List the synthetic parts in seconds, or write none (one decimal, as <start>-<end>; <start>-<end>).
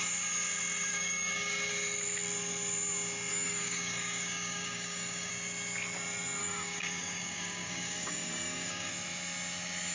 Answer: 0.9-1.7; 3.3-5.3; 6.4-8.9